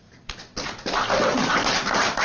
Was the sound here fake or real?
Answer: real